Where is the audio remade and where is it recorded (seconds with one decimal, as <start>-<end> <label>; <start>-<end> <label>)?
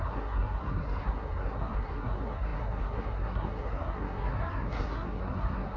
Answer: 0.0-5.8 remade